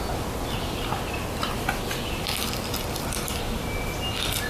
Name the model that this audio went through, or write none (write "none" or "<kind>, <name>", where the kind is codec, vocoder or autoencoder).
none